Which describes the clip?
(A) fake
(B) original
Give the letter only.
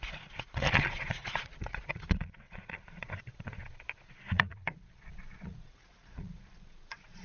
A